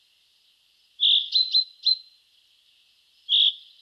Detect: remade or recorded recorded